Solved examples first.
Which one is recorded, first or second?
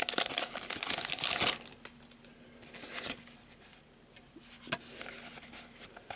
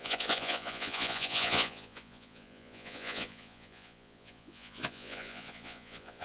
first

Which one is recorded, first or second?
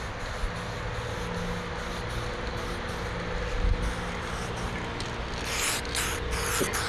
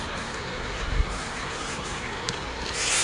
first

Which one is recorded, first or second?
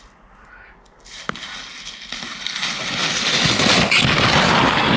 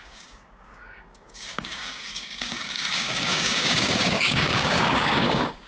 first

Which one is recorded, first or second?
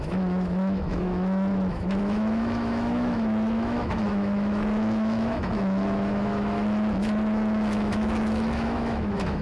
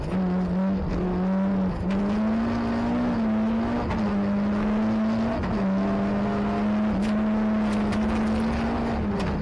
second